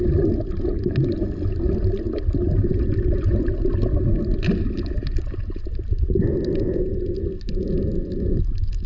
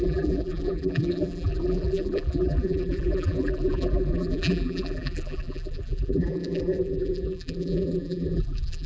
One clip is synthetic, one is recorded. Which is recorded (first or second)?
first